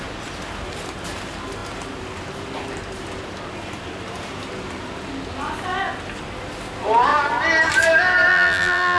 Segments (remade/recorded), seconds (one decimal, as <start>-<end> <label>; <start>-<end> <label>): 0.0-8.3 recorded; 8.3-9.0 remade